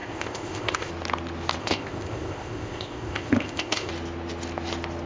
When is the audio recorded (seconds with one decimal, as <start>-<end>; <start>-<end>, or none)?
0.9-1.6; 3.9-5.1